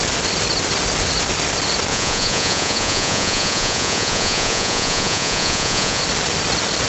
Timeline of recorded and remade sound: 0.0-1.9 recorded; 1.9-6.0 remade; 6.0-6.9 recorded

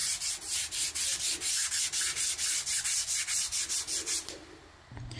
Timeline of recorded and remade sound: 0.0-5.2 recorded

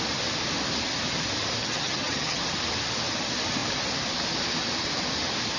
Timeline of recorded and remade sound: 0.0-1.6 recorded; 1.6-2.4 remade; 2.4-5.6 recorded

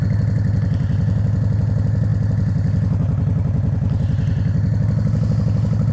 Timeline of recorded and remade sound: 0.0-5.9 recorded

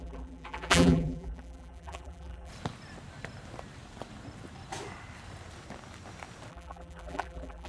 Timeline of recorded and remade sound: 0.0-2.5 remade; 2.5-6.5 recorded; 6.5-7.7 remade

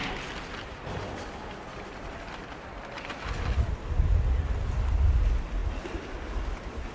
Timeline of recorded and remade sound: 0.0-6.9 recorded

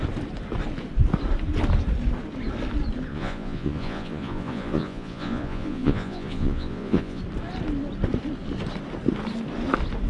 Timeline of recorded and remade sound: 0.0-3.1 recorded; 3.1-7.2 remade; 7.2-10.1 recorded